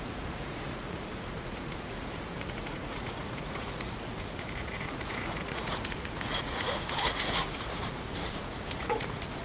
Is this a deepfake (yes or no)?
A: yes